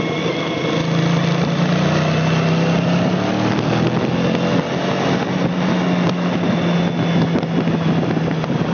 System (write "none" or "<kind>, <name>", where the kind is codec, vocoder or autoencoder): none